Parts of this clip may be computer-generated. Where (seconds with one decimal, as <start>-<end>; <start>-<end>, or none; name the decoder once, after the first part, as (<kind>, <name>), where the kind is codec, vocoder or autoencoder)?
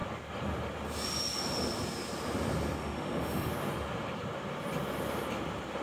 2.8-3.5 (autoencoder, DAC-VAE)